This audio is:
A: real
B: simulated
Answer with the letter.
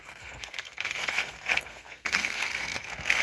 B